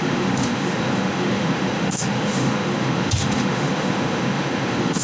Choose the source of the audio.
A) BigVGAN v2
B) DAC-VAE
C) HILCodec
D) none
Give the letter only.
B